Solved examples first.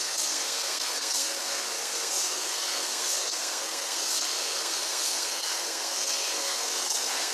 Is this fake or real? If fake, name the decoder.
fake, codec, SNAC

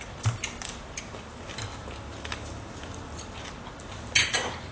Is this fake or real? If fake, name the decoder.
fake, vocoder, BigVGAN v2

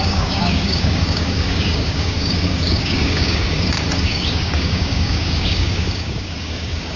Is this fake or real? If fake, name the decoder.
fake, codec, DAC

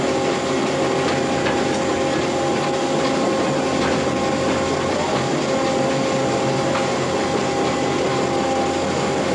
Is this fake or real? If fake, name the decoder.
real